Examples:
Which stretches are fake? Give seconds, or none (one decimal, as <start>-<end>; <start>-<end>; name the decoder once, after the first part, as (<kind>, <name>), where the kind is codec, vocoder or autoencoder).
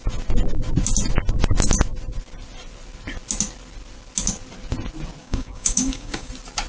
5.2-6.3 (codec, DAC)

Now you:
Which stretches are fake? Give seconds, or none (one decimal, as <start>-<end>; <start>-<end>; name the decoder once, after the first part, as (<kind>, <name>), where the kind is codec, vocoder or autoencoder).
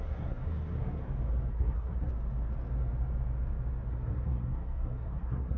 0.0-1.0 (codec, SNAC); 1.5-2.1; 3.9-5.6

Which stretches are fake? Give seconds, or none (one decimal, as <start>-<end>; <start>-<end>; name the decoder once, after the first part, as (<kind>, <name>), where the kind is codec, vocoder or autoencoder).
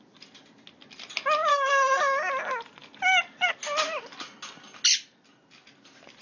1.5-2.0 (codec, SNAC)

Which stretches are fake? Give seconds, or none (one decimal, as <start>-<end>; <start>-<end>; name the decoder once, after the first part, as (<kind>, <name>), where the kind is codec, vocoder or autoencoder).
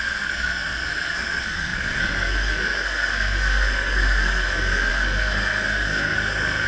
0.0-6.7 (codec, SNAC)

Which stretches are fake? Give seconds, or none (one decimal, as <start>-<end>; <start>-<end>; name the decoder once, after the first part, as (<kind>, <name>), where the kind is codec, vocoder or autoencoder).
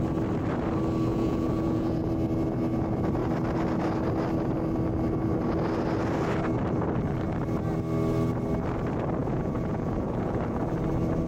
1.1-2.1 (vocoder, Vocos); 9.2-10.6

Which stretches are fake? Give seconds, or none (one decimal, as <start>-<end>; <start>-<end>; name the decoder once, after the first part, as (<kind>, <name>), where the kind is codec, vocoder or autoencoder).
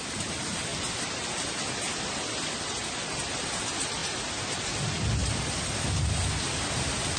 none